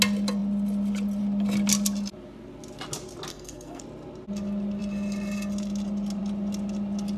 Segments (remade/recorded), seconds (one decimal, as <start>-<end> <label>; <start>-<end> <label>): 0.0-3.3 recorded; 3.3-3.8 remade; 3.8-7.2 recorded

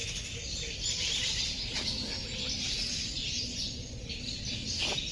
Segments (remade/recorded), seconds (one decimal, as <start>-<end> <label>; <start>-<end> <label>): 0.0-3.5 recorded; 3.5-4.1 remade; 4.1-5.1 recorded

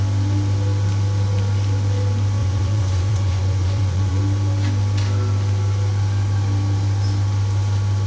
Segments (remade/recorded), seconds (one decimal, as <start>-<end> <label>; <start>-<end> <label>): 0.0-2.4 recorded; 2.4-4.2 remade; 4.2-8.1 recorded

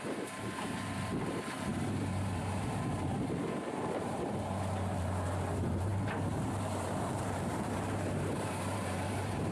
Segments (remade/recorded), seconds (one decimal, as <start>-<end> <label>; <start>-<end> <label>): 0.0-9.5 remade